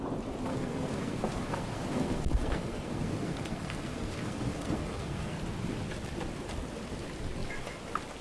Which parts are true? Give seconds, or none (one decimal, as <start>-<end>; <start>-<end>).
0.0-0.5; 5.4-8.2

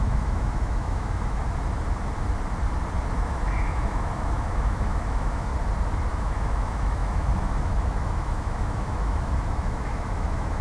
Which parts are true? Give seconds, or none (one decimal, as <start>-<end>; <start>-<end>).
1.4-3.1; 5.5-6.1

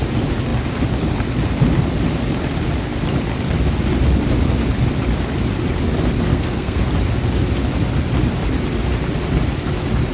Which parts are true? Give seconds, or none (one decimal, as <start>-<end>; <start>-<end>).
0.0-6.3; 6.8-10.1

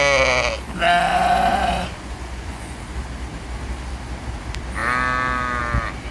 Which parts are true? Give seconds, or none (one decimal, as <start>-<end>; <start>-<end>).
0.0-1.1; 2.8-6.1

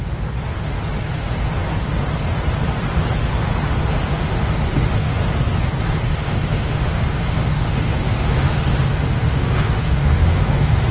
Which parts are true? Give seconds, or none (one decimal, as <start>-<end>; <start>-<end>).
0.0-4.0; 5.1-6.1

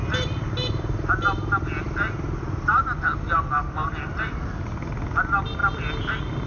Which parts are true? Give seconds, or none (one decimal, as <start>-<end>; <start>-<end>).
0.0-6.5